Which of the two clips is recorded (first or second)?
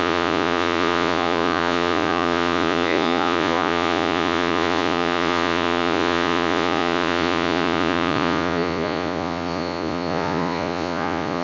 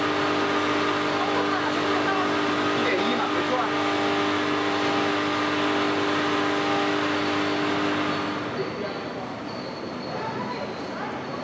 second